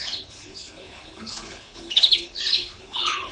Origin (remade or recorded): remade